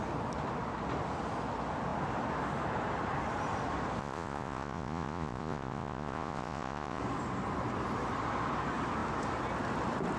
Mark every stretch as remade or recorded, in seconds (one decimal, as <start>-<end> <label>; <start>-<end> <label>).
0.0-4.0 recorded; 4.0-7.0 remade; 7.0-10.2 recorded